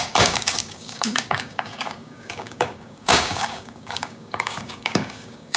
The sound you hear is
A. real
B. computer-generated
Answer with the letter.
B